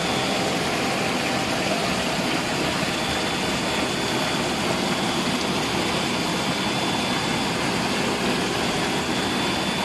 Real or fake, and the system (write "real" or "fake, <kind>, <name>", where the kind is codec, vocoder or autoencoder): real